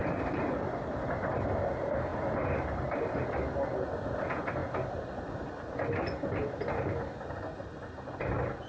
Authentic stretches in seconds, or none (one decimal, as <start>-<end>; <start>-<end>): 1.7-2.1; 3.0-4.6; 5.3-8.7

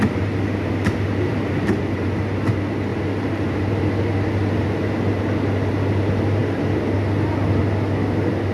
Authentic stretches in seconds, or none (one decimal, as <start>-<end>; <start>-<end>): 0.0-1.3; 2.2-2.9; 3.8-8.5

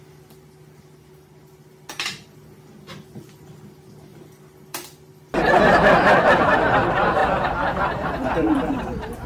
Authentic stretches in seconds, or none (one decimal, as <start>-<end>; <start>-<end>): 0.0-5.3; 6.5-7.2; 8.7-9.3